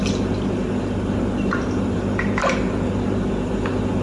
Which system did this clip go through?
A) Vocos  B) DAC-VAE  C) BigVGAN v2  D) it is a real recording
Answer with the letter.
D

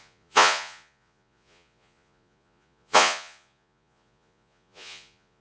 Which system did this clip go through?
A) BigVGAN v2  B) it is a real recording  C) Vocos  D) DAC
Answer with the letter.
C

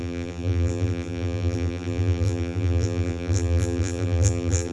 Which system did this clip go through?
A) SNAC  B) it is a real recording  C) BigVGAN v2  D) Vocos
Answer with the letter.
C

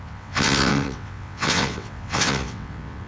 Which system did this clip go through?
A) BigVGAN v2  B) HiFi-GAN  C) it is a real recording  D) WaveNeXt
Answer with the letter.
D